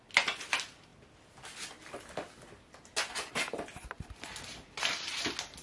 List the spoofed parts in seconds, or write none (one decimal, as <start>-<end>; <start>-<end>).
none